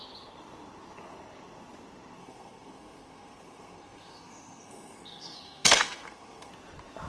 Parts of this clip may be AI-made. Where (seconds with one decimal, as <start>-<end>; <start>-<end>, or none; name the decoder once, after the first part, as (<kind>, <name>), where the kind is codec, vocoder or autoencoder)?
2.2-6.5 (codec, SNAC)